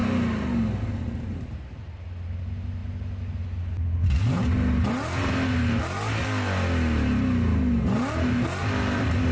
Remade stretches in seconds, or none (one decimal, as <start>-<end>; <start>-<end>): none